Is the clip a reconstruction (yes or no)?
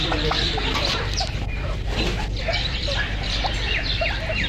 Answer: yes